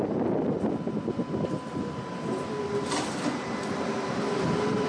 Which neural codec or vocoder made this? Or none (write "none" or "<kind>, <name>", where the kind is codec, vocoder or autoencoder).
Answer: vocoder, BigVGAN v2